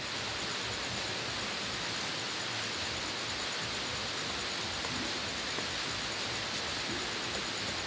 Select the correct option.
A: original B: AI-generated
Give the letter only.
A